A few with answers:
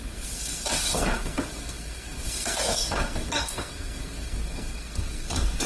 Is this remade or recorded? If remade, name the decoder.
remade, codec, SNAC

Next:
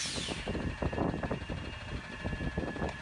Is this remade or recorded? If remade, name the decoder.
recorded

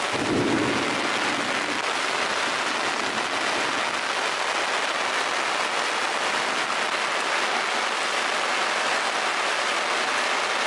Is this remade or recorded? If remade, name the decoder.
recorded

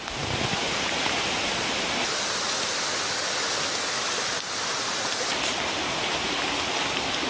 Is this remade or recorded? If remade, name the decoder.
recorded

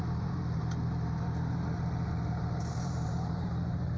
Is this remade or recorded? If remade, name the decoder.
remade, vocoder, BigVGAN v2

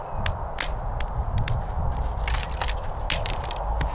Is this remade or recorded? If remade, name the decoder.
recorded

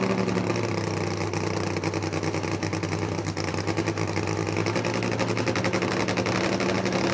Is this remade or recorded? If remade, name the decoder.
recorded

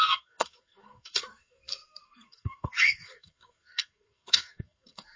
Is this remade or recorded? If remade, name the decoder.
remade, codec, SNAC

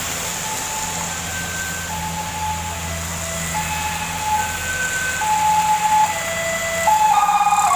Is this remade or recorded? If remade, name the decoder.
recorded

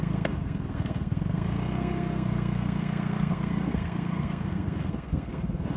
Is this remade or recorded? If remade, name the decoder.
remade, codec, SNAC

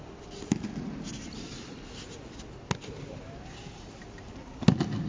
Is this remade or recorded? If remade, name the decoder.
recorded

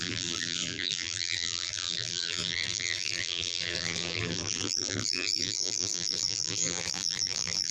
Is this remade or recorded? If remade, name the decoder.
remade, vocoder, BigVGAN v2